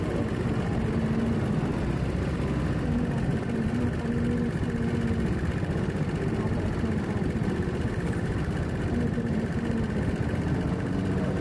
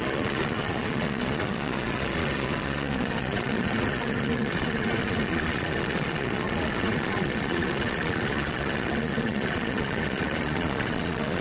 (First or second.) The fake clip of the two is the second